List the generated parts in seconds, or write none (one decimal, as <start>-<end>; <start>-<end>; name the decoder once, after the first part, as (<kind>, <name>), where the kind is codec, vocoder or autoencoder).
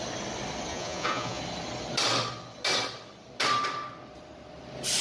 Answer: 0.7-1.4 (vocoder, Vocos)